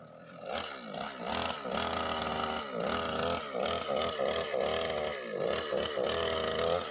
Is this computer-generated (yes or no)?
no